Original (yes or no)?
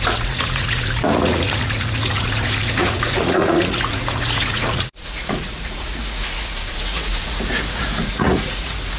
no